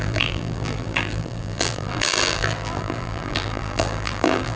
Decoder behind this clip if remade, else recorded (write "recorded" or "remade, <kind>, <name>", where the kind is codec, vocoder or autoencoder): remade, vocoder, BigVGAN v2